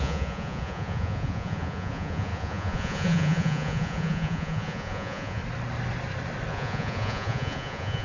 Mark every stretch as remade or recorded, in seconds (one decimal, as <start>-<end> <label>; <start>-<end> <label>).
0.0-5.4 remade; 5.4-6.5 recorded; 6.5-8.0 remade

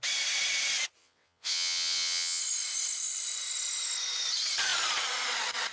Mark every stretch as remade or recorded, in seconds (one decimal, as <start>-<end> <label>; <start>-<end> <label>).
0.0-1.0 recorded; 1.0-2.4 remade; 2.4-5.7 recorded

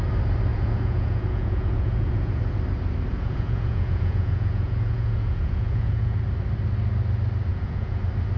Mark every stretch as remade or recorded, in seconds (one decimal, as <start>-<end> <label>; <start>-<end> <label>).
0.0-0.5 recorded; 0.5-2.4 remade; 2.4-3.1 recorded; 3.1-6.2 remade; 6.2-7.5 recorded; 7.5-8.0 remade; 8.0-8.4 recorded

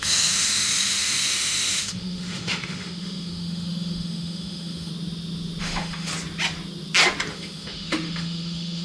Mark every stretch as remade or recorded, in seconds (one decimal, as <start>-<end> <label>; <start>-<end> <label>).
0.0-4.9 remade; 4.9-5.6 recorded; 5.6-6.1 remade; 6.1-7.3 recorded; 7.3-8.8 remade

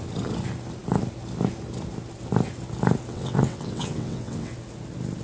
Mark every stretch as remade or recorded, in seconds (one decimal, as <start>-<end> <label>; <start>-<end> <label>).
0.0-3.1 recorded; 3.1-4.5 remade; 4.5-5.2 recorded

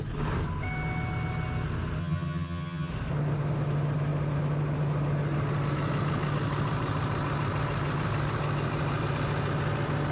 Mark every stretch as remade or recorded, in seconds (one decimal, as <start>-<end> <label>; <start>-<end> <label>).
0.0-2.0 recorded; 2.0-2.9 remade; 2.9-10.1 recorded

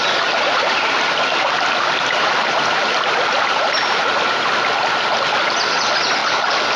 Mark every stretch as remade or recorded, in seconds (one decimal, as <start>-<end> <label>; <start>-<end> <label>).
0.0-6.8 recorded

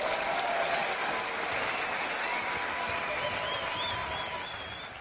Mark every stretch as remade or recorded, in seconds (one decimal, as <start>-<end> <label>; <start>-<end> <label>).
0.0-5.0 recorded